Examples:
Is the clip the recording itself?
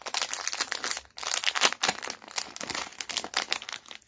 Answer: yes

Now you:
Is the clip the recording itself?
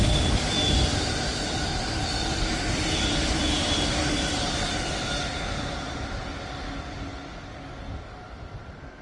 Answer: yes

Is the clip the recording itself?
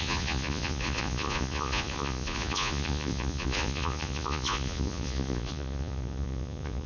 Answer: no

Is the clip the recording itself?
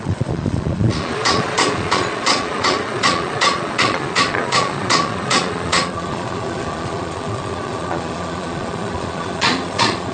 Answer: no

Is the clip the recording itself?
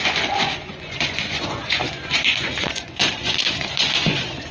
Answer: no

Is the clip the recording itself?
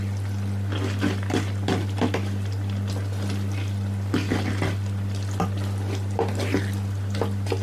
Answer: yes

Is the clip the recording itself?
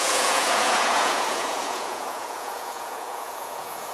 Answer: no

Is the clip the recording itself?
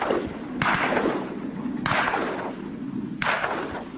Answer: yes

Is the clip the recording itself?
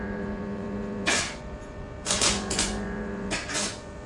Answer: no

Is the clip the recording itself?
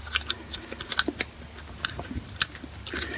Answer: yes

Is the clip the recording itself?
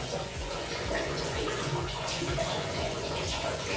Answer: no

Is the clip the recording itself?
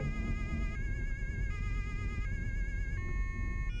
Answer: yes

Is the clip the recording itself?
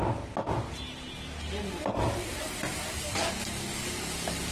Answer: yes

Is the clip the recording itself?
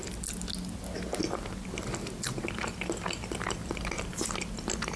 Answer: yes